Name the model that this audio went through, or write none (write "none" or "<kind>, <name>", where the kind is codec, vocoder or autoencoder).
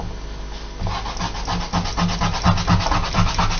none